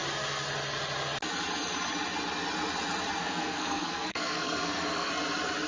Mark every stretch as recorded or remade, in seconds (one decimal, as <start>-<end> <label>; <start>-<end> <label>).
0.0-3.2 recorded; 3.2-5.1 remade; 5.1-5.7 recorded